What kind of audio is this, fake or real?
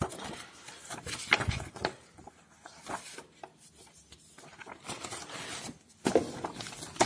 real